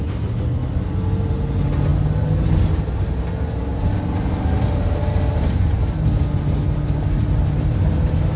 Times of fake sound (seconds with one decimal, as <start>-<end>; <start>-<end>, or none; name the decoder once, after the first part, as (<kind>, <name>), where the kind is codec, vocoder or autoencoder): none